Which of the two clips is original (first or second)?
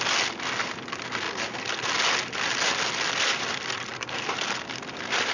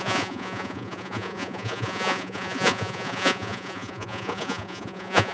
first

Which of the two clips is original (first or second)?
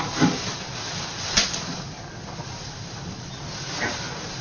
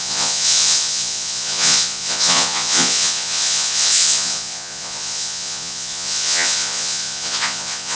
first